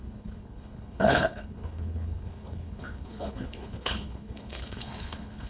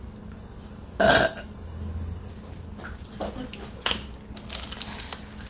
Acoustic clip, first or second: second